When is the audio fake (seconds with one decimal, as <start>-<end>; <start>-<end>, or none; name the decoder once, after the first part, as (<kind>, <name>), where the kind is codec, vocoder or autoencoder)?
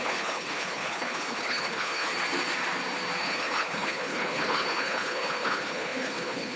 0.0-2.1 (codec, HILCodec); 3.2-6.6